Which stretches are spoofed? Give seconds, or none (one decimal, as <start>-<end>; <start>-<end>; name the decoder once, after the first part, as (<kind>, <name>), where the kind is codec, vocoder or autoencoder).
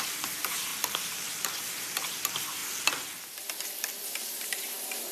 0.0-0.7 (vocoder, BigVGAN v2); 1.7-2.6; 4.3-5.1